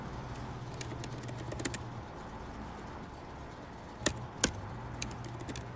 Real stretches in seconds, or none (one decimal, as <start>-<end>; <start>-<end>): 0.0-5.8